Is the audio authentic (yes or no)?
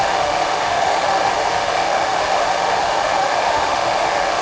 no